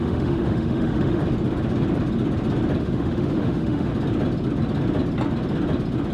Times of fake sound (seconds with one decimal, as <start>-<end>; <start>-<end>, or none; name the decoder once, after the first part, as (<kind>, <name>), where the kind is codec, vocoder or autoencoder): 0.0-1.2 (autoencoder, DAC-VAE); 2.8-3.9